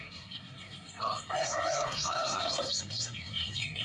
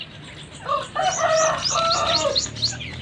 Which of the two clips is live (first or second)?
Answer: second